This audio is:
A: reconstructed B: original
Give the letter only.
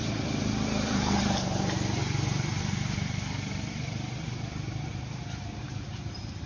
A